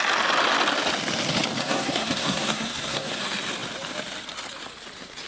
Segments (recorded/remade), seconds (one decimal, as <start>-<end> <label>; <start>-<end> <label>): 0.0-1.6 recorded; 1.6-3.2 remade; 3.2-5.3 recorded